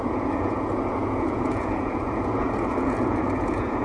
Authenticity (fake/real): fake